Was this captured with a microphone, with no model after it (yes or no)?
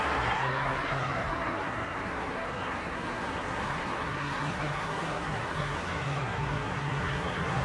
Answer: no